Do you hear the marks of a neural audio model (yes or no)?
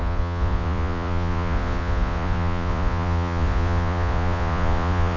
yes